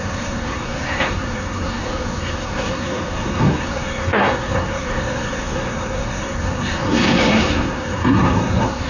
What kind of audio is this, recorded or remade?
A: remade